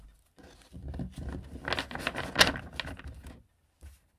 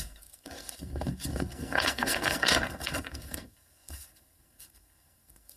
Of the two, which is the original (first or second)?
first